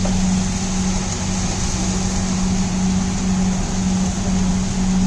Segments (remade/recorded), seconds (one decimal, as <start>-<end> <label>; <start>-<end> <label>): 0.0-5.1 recorded